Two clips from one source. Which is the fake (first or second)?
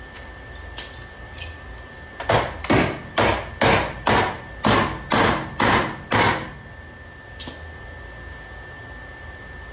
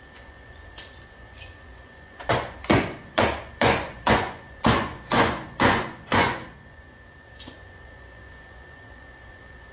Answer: second